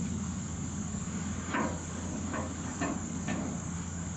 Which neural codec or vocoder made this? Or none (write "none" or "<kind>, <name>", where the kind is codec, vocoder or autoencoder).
codec, DAC